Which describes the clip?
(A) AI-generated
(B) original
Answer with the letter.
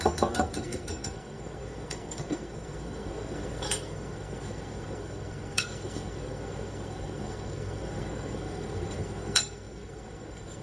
A